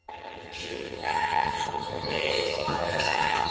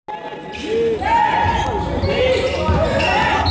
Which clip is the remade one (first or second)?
first